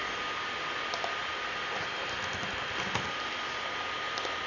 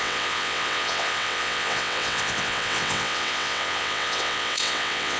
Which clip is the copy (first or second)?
second